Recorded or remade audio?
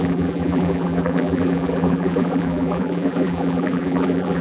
remade